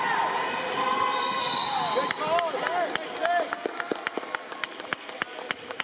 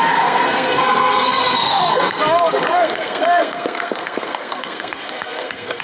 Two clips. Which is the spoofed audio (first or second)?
second